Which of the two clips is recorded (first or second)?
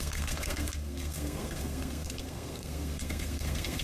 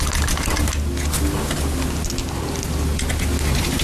second